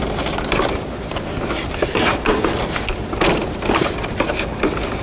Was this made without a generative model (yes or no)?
yes